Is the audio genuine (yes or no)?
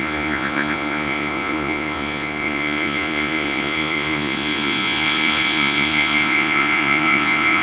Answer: no